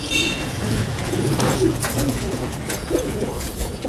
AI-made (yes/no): yes